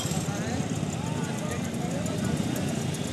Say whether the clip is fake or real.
real